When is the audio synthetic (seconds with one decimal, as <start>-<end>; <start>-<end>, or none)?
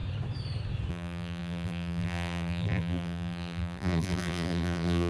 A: 0.9-5.1